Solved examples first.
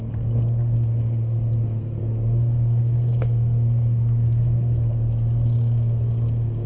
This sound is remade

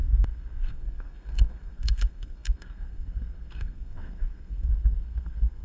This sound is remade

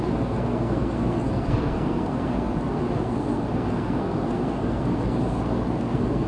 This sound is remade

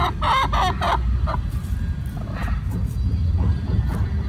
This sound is recorded